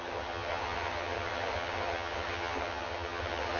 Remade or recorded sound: remade